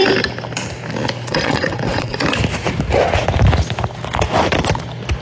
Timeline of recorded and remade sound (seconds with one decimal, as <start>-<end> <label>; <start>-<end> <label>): 0.0-1.3 recorded; 1.3-2.2 remade; 2.2-5.2 recorded